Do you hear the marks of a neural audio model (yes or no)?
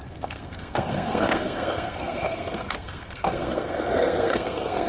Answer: yes